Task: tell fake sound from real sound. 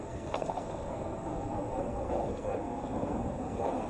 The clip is fake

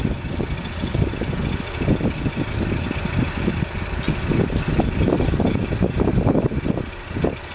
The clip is real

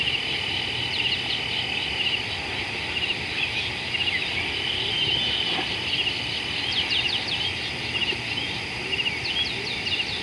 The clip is real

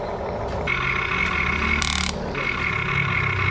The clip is real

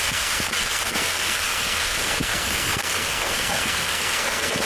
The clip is fake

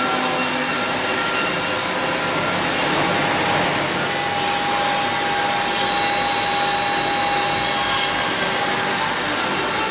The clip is real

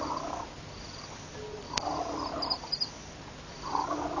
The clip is real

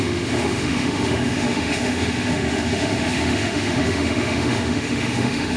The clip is fake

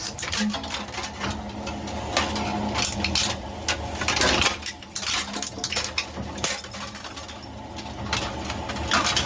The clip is real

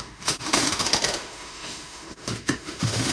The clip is fake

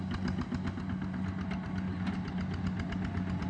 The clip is real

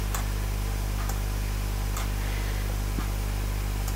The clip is real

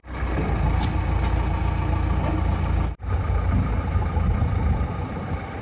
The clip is real